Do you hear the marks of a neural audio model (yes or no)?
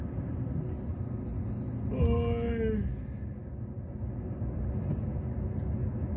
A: no